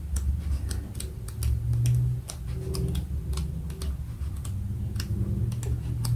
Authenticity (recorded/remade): recorded